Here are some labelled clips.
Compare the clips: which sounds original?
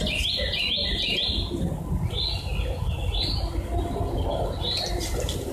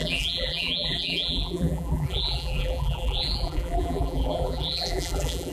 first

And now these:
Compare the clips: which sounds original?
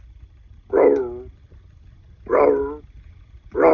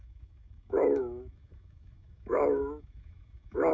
first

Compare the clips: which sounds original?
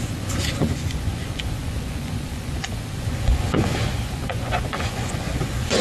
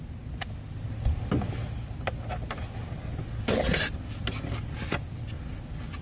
second